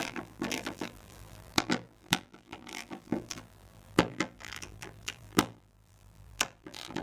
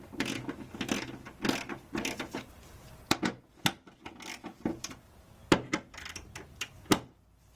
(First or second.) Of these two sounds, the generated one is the first